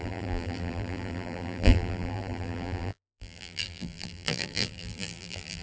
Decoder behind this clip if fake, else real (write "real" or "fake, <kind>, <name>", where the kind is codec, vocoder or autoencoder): fake, vocoder, BigVGAN v2